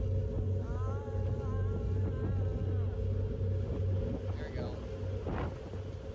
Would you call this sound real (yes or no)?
yes